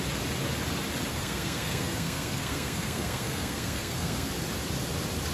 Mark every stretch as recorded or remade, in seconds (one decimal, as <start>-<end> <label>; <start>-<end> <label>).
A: 0.0-1.1 recorded; 1.1-4.3 remade; 4.3-5.3 recorded

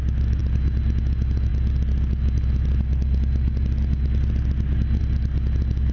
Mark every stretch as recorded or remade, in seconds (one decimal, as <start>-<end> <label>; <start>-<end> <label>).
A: 0.0-5.9 recorded

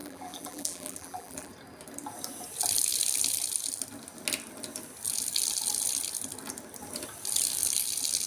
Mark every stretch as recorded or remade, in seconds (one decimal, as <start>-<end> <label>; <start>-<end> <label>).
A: 0.0-1.5 remade; 1.5-8.3 recorded

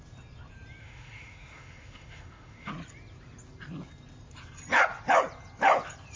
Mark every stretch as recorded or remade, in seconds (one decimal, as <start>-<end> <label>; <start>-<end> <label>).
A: 0.0-0.8 recorded; 0.8-2.7 remade; 2.7-6.2 recorded